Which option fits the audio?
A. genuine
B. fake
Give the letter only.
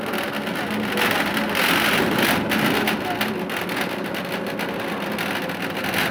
A